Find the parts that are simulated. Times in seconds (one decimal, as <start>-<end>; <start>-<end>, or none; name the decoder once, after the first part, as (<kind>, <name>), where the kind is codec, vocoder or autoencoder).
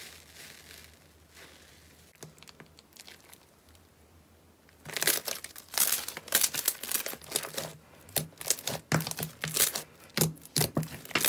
none